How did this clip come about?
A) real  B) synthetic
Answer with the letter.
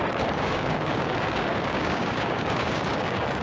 B